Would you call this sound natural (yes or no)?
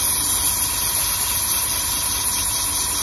yes